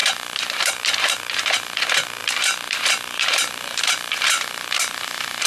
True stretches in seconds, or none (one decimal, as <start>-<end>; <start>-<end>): 1.8-2.2